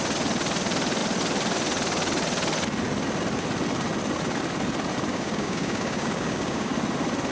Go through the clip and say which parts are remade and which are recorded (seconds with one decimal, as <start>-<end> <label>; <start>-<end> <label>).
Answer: 0.0-5.1 recorded; 5.1-6.7 remade; 6.7-7.3 recorded